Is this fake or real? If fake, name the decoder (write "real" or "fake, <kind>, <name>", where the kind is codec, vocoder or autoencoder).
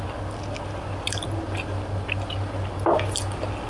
real